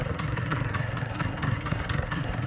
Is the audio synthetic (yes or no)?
yes